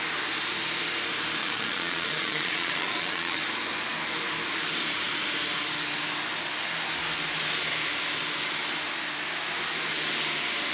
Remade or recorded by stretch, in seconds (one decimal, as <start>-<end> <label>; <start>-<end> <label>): 0.0-1.4 recorded; 1.4-3.4 remade; 3.4-10.7 recorded